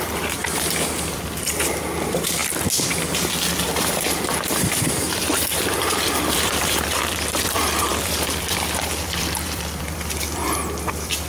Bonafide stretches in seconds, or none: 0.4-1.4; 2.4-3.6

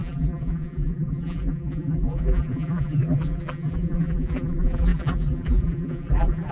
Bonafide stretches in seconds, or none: none

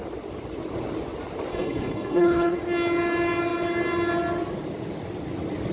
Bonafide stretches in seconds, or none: 0.0-1.5; 2.6-5.7

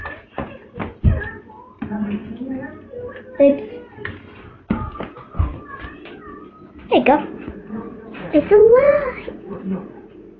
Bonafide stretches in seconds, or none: 0.7-7.3